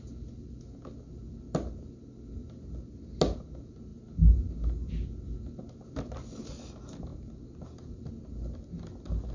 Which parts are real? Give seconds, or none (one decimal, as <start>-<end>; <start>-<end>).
0.0-9.3